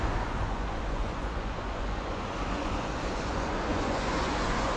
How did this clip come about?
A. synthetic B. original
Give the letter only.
A